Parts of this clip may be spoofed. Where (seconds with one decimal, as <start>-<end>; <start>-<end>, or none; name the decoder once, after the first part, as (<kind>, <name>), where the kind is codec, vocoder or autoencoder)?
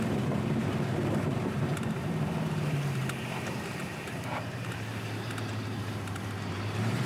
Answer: 0.0-7.1 (vocoder, BigVGAN v2)